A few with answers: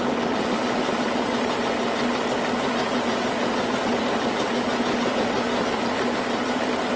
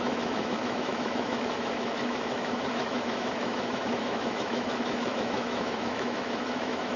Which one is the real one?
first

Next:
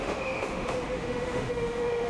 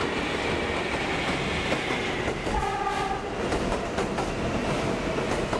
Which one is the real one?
second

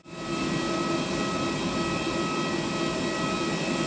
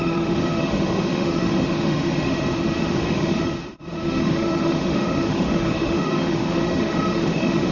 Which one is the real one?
first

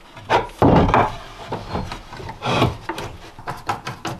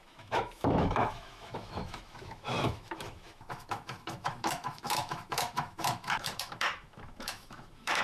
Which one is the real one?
first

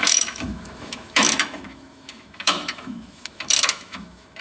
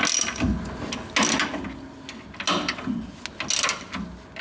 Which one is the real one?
second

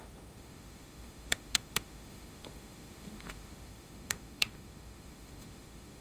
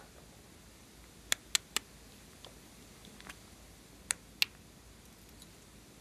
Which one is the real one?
second